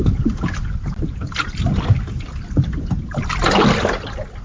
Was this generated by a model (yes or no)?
no